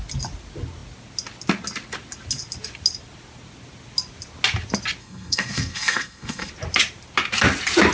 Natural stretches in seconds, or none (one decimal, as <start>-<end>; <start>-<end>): 0.0-5.0; 6.5-7.9